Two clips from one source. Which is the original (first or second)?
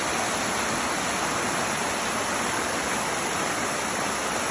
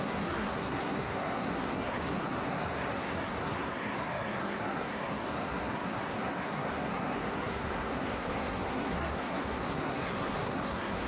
first